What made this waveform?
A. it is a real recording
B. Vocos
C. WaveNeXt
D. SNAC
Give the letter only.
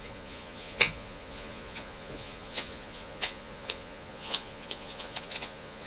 B